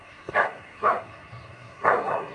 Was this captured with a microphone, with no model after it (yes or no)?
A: no